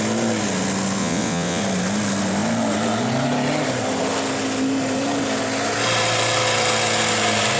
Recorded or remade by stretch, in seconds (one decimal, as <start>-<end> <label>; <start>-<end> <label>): 0.0-1.0 recorded; 1.0-1.6 remade; 1.6-7.6 recorded